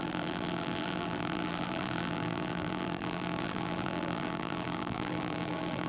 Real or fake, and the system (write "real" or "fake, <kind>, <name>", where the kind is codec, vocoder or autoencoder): fake, vocoder, BigVGAN v2